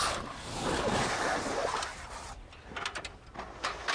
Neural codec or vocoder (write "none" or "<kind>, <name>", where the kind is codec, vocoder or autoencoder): none